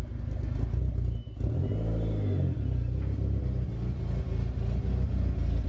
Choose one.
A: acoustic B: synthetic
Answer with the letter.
A